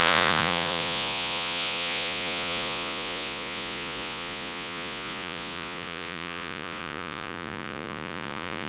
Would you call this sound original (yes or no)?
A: no